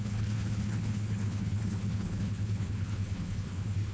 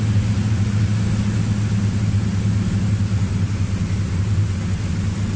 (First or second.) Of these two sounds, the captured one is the second